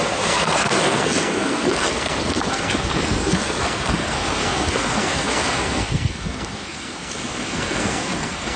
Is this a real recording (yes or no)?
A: no